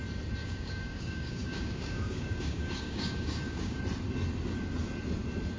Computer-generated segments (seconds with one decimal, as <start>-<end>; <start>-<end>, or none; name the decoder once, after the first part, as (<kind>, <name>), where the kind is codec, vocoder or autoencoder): 0.4-3.8 (codec, DAC)

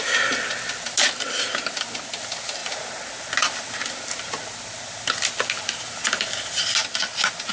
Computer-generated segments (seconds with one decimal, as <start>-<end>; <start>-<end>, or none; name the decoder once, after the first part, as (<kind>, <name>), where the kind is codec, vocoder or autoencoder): none

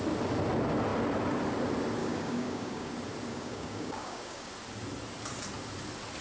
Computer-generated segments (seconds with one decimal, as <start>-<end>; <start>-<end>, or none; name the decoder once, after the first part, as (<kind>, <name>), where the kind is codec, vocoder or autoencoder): 2.0-2.9 (codec, DAC); 3.3-4.5

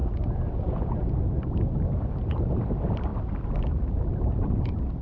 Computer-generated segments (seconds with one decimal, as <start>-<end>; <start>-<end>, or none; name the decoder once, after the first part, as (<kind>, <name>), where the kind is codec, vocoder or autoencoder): none

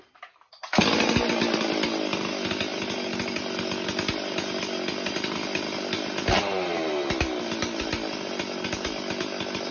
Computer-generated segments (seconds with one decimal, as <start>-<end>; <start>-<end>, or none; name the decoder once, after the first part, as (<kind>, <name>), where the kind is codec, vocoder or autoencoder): none

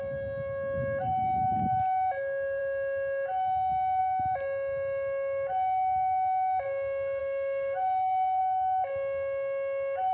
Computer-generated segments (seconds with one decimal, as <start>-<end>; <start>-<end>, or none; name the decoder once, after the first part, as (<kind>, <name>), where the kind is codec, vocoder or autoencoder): 7.2-8.4 (codec, DAC)

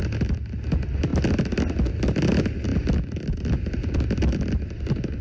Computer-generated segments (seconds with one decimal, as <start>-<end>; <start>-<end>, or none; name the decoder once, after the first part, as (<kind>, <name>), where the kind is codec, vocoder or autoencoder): none

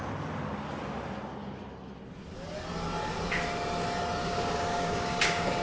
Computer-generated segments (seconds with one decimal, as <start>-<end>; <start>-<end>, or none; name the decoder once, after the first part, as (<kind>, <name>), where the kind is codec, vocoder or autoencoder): 4.2-5.6 (codec, DAC)